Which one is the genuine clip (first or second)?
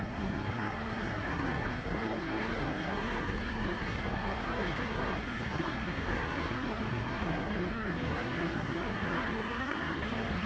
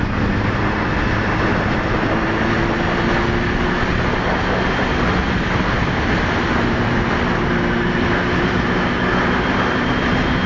second